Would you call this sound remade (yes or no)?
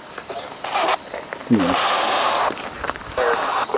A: yes